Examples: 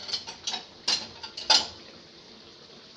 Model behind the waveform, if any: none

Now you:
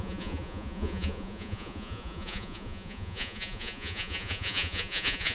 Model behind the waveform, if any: vocoder, Vocos